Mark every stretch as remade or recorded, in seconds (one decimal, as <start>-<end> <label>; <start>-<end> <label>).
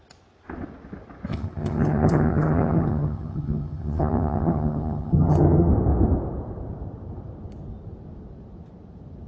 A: 0.0-1.3 recorded; 1.3-5.7 remade; 5.7-9.3 recorded